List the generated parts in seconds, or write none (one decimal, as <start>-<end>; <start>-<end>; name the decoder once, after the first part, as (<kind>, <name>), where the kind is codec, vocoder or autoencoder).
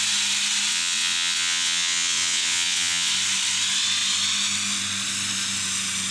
0.7-3.1 (vocoder, WaveNeXt)